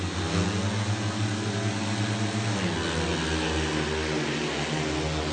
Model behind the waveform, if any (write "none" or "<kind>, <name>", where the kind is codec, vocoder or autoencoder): none